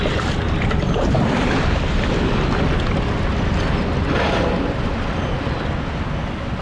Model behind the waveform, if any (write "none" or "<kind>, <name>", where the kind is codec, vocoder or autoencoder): none